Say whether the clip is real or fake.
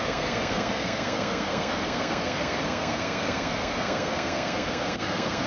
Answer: fake